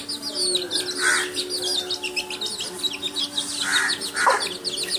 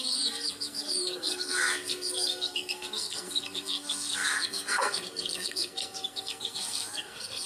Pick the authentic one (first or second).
first